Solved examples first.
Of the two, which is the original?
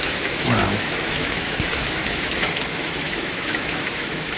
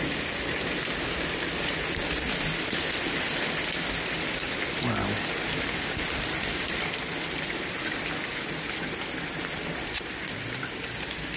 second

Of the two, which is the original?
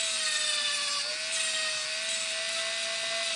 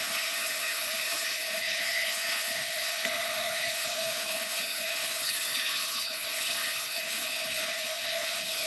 first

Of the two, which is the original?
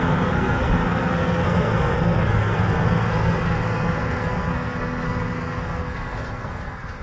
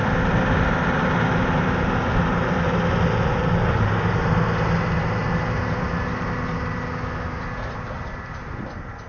second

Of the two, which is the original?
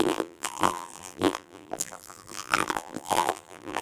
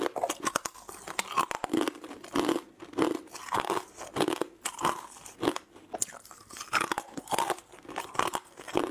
second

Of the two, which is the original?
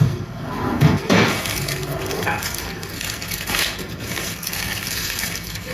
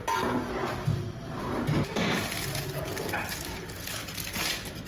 second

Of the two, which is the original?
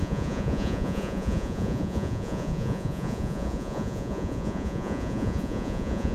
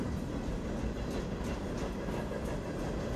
second